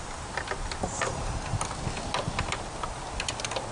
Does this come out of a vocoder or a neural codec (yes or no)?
no